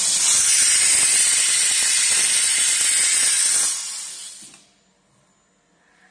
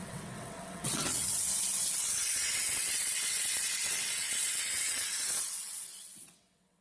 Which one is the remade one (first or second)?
second